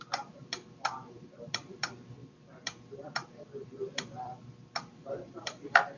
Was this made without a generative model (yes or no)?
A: no